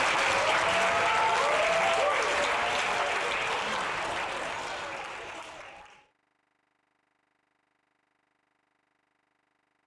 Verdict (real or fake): real